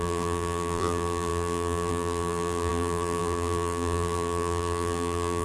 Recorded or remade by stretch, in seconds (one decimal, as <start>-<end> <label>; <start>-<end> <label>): 0.0-5.4 remade